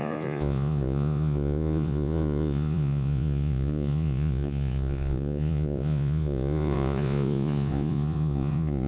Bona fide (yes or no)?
no